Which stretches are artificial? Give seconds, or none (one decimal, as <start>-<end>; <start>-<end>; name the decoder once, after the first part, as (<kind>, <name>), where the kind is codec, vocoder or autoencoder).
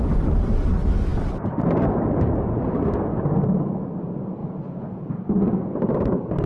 4.4-5.1 (vocoder, Vocos)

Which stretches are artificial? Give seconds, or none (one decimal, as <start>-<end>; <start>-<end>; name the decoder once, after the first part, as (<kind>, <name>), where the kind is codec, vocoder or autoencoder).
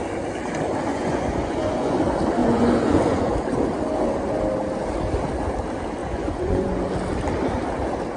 0.9-2.0 (vocoder, Vocos); 2.4-3.3; 6.0-6.8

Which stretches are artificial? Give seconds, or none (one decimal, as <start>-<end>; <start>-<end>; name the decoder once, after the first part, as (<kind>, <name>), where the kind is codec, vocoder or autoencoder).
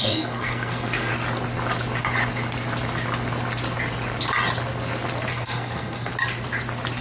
0.0-1.1 (codec, SNAC); 5.3-6.1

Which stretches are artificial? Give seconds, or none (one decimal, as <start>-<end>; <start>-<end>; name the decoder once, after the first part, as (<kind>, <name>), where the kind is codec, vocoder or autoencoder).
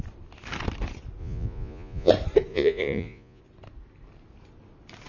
1.2-2.1 (vocoder, Vocos); 2.5-3.4